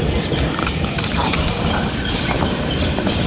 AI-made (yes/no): no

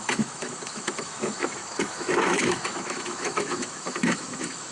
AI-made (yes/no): yes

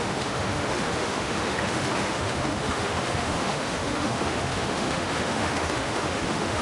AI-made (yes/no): yes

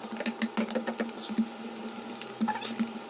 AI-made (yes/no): no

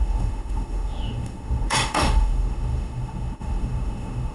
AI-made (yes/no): yes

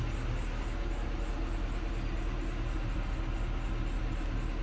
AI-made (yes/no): no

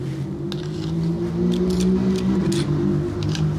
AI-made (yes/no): no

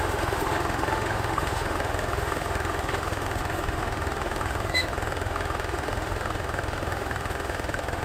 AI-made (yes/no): yes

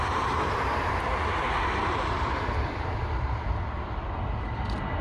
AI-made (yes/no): no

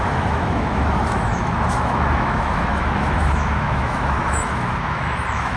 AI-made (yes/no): yes